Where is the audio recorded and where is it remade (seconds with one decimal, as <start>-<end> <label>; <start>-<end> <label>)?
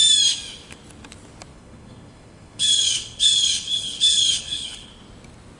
0.0-1.5 recorded; 1.5-4.9 remade; 4.9-5.6 recorded